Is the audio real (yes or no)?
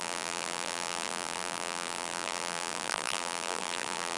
no